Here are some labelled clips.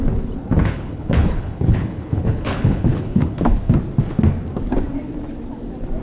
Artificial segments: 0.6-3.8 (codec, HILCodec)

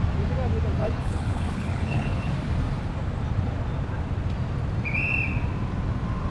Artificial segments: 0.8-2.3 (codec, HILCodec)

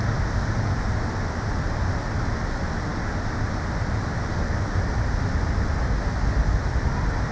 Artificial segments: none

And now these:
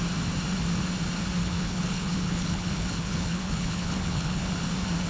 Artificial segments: 1.4-4.5 (codec, HILCodec)

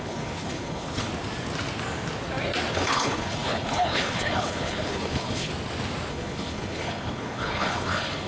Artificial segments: 0.0-1.1 (codec, HILCodec); 2.7-5.5; 6.1-8.3

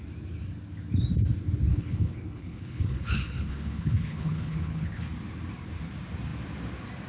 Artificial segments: 1.7-5.1 (codec, HILCodec)